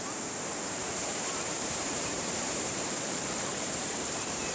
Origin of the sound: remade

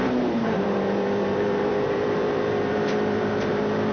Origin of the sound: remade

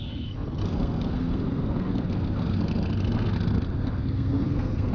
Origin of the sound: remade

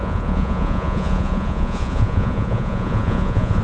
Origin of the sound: remade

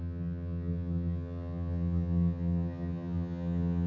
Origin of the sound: remade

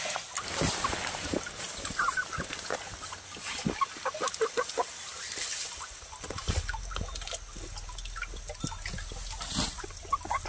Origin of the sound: recorded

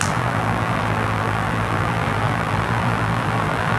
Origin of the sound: remade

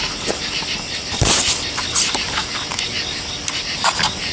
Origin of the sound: recorded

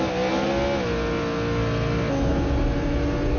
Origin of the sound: recorded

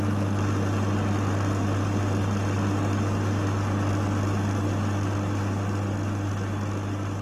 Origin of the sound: recorded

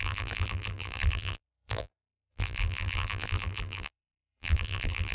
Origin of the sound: remade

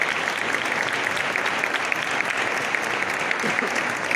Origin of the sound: recorded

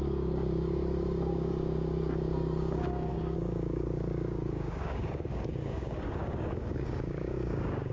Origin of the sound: remade